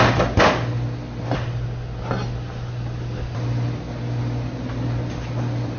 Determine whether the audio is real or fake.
real